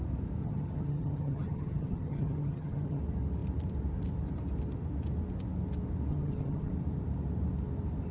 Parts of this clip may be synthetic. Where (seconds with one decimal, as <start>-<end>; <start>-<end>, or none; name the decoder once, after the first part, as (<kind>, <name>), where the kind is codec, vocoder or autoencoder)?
0.4-3.0 (vocoder, HiFi-GAN); 6.1-6.7